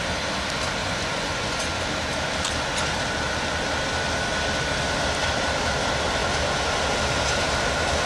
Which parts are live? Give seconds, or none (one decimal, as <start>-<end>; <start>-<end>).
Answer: 0.0-0.8; 1.8-8.1